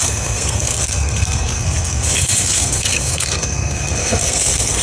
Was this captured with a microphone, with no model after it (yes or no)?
no